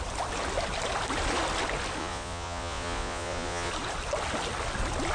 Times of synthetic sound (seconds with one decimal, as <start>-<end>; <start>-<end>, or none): 2.0-3.7